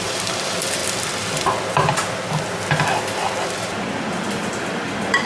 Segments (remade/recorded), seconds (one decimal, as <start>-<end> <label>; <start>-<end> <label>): 0.0-0.8 remade; 0.8-4.0 recorded; 4.0-5.3 remade